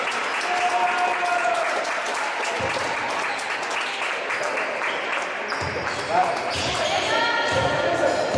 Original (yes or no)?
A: yes